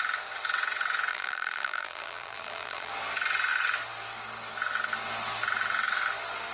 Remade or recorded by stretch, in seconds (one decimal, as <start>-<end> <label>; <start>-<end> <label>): 0.0-1.1 recorded; 1.1-2.9 remade; 2.9-6.5 recorded